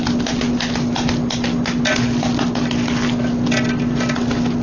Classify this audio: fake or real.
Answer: real